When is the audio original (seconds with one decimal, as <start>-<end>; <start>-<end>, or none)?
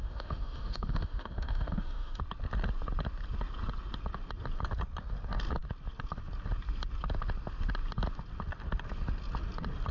2.2-9.9